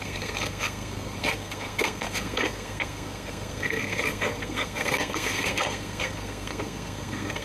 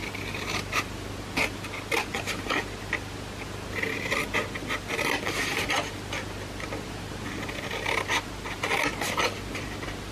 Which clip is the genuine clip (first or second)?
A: second